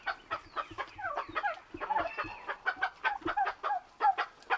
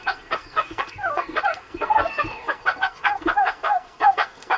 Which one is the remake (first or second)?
second